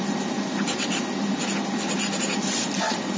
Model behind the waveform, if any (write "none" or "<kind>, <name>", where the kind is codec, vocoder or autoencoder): none